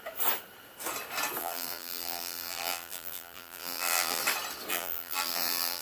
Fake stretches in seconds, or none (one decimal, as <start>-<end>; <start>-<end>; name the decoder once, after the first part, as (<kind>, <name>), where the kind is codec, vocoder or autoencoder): 1.4-4.2 (vocoder, BigVGAN v2); 4.7-5.8

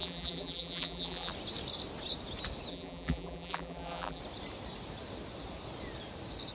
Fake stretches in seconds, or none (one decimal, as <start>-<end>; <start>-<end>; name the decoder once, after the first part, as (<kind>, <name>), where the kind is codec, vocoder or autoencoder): 0.0-1.3 (vocoder, BigVGAN v2); 2.7-4.2